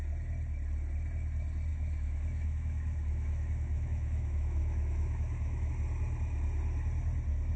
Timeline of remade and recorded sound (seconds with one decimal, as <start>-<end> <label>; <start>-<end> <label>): 0.0-1.7 recorded; 1.7-5.7 remade; 5.7-7.6 recorded